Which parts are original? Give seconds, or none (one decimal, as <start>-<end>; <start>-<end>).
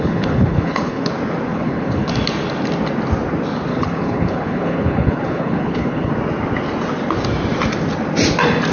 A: 1.1-1.5; 2.1-3.7; 6.1-8.7